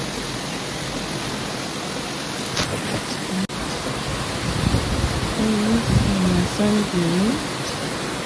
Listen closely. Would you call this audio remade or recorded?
recorded